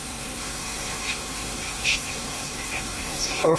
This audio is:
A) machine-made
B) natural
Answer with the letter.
A